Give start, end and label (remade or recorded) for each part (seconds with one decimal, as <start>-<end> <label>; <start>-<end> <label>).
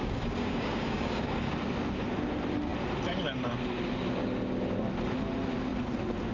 0.0-1.5 remade; 1.5-6.3 recorded